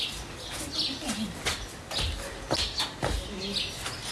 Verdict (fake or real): real